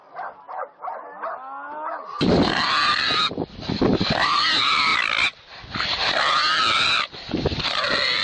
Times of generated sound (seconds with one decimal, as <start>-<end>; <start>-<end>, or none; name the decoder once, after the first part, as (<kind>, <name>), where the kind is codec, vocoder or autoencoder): 3.9-4.4 (vocoder, BigVGAN v2)